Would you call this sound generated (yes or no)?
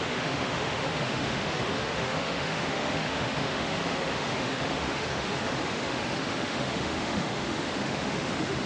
yes